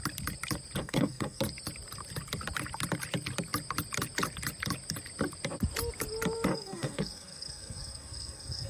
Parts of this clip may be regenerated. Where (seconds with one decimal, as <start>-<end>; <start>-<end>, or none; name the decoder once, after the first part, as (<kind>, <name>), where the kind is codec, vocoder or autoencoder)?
0.8-1.4 (codec, SNAC); 6.5-8.7